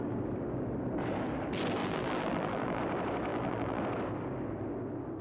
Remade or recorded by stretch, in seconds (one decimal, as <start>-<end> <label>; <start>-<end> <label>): 0.0-1.8 recorded; 1.8-2.8 remade; 2.8-3.3 recorded; 3.3-3.8 remade; 3.8-5.2 recorded